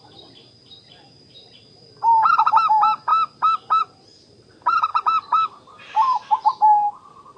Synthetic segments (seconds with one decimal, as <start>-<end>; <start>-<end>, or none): 0.0-3.1; 3.8-7.4